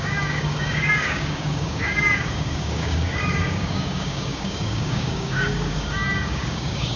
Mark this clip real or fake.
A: fake